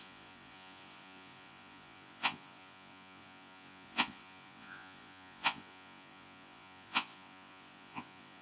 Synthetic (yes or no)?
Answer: yes